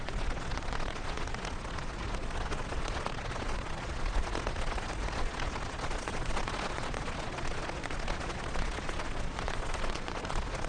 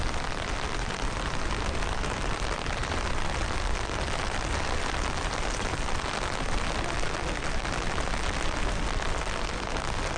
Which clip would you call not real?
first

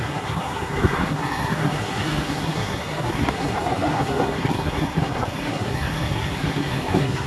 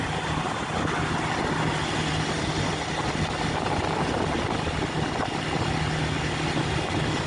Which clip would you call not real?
first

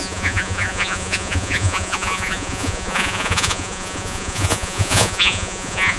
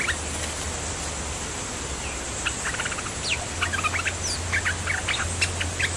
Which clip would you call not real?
first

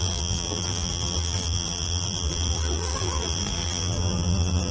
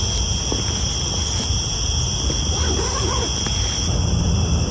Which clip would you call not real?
first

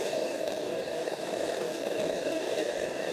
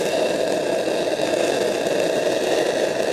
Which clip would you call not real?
first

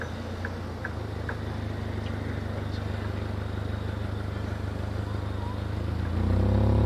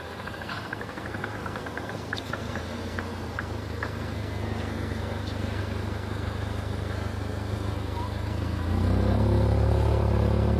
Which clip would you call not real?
second